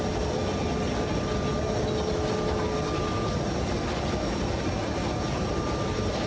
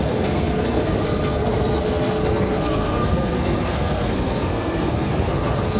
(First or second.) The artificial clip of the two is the second